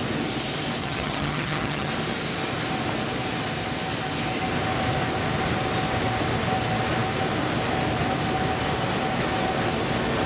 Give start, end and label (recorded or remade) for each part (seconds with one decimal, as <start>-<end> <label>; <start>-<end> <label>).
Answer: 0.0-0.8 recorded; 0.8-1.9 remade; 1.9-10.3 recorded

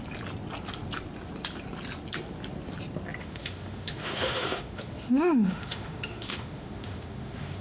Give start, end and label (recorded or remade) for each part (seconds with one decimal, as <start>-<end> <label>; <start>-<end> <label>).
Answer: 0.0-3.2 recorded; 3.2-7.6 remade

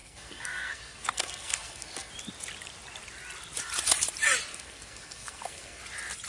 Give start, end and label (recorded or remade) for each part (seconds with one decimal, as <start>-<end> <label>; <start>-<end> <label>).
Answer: 0.0-2.1 remade; 2.1-4.5 recorded; 4.5-5.8 remade; 5.8-6.3 recorded